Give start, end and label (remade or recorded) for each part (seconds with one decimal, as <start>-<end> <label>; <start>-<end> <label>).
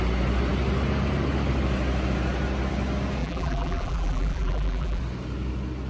0.0-3.2 recorded; 3.2-5.0 remade; 5.0-5.9 recorded